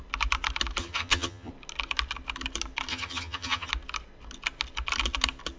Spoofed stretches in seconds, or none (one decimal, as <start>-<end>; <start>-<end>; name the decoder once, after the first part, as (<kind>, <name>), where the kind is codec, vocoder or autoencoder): 0.8-1.5 (vocoder, HiFi-GAN); 2.9-3.7